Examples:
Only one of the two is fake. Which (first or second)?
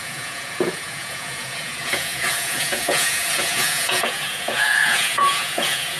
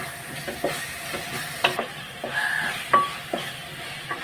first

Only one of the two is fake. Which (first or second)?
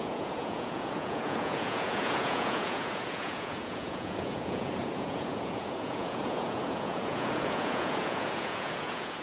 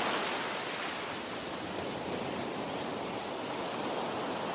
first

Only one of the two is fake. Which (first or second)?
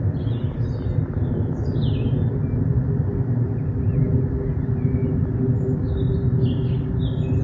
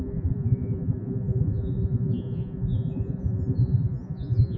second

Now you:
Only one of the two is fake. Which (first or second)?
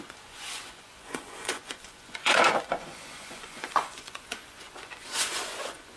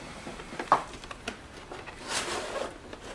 first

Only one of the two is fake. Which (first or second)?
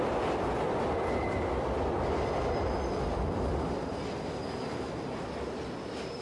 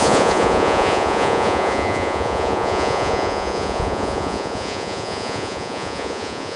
second